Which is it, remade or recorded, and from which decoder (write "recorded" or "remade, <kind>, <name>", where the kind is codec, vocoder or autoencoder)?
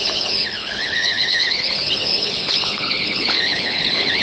remade, codec, HILCodec